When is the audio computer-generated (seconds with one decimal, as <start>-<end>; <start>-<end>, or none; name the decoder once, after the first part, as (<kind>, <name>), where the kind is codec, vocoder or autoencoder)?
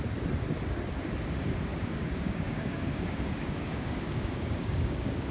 1.7-5.3 (codec, DAC)